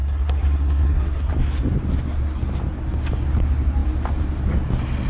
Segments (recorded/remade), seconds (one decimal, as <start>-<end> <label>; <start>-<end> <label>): 0.0-1.3 remade; 1.3-5.1 recorded